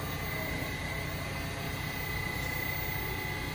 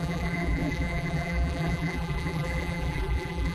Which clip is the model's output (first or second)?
second